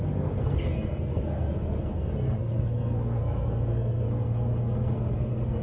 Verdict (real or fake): fake